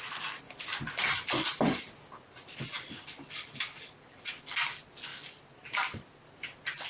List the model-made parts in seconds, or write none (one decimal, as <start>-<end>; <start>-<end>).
none